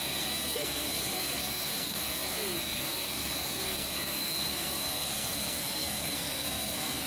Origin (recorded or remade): remade